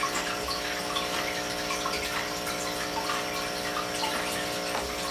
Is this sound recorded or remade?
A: recorded